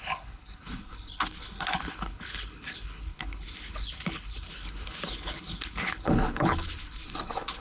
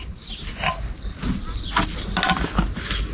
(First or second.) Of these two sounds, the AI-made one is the first